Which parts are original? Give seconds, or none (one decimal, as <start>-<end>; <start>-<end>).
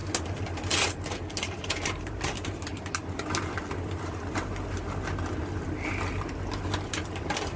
0.0-1.6; 2.7-7.6